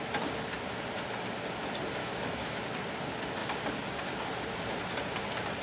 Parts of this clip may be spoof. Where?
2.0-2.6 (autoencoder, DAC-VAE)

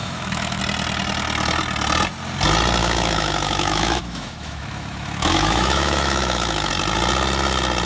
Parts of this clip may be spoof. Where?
0.0-0.6 (autoencoder, DAC-VAE); 2.8-6.7

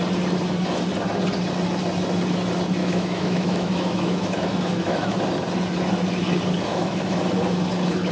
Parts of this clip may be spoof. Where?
2.8-5.2 (autoencoder, DAC-VAE); 6.7-7.2

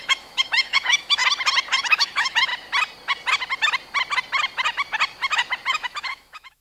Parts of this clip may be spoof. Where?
0.0-1.2 (autoencoder, DAC-VAE); 1.8-2.5; 5.7-6.6

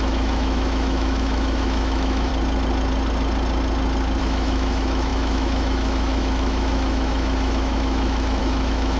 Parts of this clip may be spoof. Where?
0.0-2.3 (autoencoder, DAC-VAE); 4.2-9.0

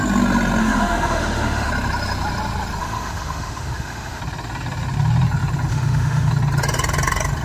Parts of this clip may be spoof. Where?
0.6-1.7 (autoencoder, DAC-VAE); 2.8-4.2; 5.7-6.3

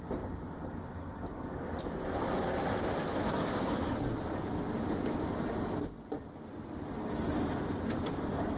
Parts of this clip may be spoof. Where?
3.0-3.6 (autoencoder, DAC-VAE)